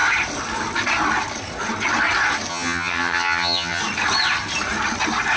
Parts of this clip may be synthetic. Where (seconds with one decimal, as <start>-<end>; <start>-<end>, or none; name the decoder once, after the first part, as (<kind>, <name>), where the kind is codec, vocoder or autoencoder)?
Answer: 2.5-3.8 (vocoder, HiFi-GAN)